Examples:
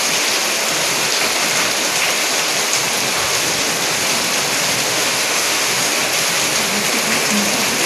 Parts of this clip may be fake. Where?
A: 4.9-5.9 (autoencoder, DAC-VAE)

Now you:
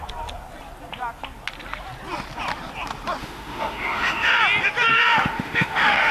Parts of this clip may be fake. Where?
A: 3.2-4.4 (autoencoder, DAC-VAE); 4.9-6.1

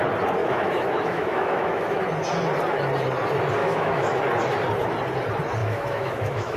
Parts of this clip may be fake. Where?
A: 0.4-2.0 (autoencoder, DAC-VAE); 3.6-4.2; 5.6-6.6

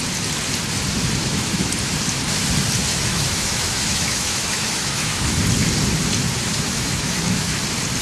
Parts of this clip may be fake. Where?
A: 1.2-1.7 (autoencoder, DAC-VAE); 2.9-5.4; 6.5-7.6

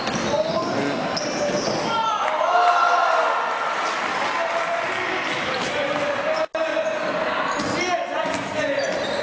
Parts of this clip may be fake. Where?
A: none